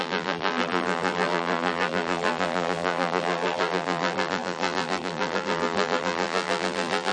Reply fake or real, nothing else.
fake